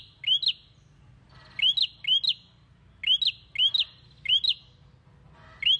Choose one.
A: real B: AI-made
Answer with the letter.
A